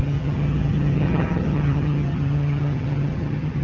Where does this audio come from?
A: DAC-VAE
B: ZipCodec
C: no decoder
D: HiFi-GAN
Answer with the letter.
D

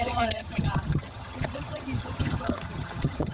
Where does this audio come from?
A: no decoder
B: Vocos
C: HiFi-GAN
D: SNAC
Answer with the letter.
C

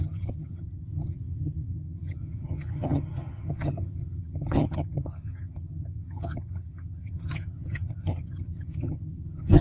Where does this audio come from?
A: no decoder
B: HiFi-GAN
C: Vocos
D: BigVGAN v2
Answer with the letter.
B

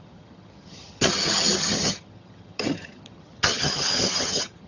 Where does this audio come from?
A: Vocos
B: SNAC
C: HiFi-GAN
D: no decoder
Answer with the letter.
C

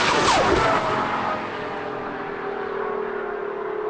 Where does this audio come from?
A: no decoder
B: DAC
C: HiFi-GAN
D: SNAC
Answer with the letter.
A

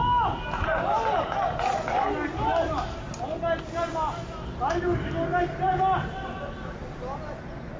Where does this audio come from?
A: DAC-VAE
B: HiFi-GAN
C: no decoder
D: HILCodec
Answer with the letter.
C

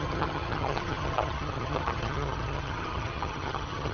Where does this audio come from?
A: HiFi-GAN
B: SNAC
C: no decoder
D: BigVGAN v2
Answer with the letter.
A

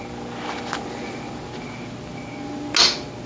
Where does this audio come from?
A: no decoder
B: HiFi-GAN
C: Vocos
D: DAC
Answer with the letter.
A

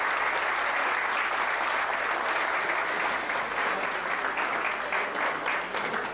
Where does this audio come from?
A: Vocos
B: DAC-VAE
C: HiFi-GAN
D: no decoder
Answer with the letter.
D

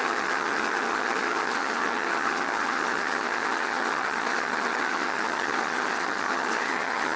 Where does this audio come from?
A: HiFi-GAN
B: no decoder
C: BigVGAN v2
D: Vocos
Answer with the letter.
A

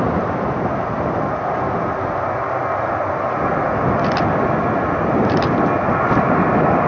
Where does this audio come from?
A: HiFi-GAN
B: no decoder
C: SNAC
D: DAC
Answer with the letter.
B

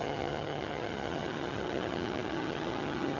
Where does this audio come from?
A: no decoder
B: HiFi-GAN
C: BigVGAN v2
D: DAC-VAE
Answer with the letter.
B